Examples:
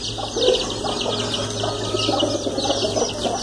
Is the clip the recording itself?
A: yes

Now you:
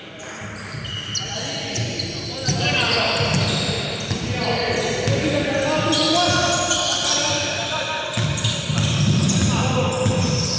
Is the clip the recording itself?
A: yes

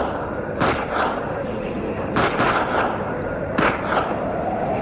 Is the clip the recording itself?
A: yes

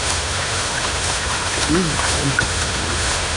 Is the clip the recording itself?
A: no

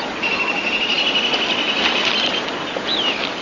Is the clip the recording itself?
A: yes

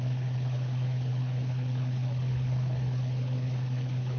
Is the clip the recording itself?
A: no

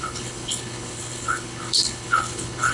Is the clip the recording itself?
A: no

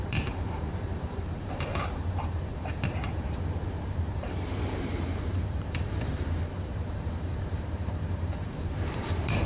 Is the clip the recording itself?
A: no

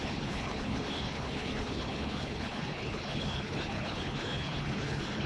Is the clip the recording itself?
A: no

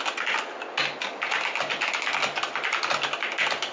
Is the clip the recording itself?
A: yes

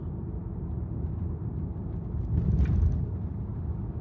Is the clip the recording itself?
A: yes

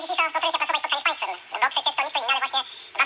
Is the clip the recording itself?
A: yes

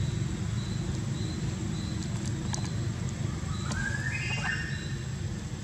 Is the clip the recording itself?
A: yes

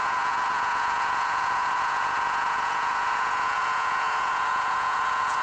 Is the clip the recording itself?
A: no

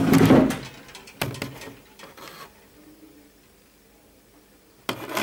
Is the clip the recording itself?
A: yes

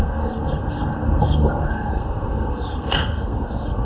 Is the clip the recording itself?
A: no